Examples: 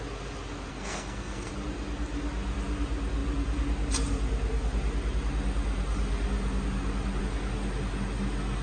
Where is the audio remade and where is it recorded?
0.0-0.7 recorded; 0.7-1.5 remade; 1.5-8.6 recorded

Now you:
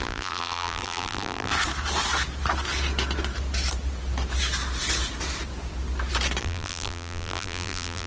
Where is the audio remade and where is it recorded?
0.0-1.5 remade; 1.5-6.4 recorded; 6.4-8.1 remade

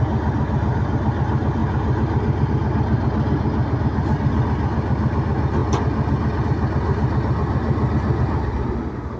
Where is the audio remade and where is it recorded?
0.0-9.2 recorded

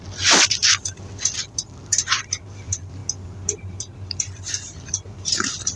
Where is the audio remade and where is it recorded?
0.0-3.0 remade; 3.0-3.7 recorded; 3.7-5.8 remade

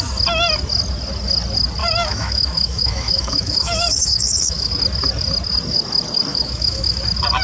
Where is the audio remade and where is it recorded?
0.0-1.8 recorded; 1.8-4.7 remade; 4.7-6.3 recorded; 6.3-7.0 remade; 7.0-7.4 recorded

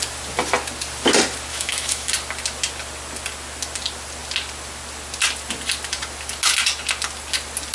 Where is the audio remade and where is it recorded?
0.0-1.5 recorded; 1.5-2.1 remade; 2.1-7.7 recorded